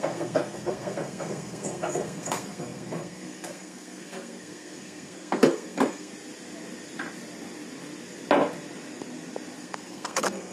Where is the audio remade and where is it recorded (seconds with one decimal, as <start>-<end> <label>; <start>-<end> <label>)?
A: 0.0-6.1 remade; 6.1-9.6 recorded; 9.6-10.5 remade